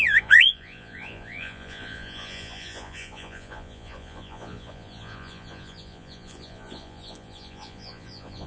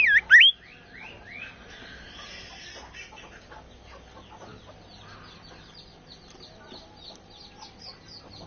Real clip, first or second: second